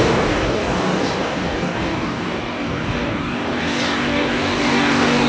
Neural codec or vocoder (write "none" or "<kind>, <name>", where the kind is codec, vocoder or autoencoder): codec, DAC